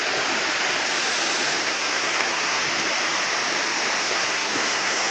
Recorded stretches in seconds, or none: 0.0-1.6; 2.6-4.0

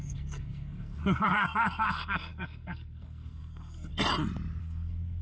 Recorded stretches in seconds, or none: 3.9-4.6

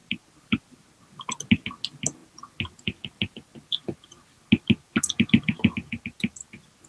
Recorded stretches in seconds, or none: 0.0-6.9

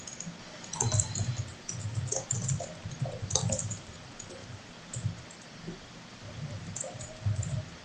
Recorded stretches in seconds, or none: 0.0-7.8

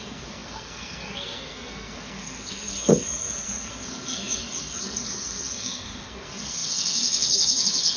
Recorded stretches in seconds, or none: none

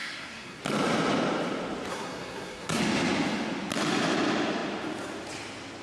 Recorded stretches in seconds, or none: 0.6-1.9; 2.8-5.8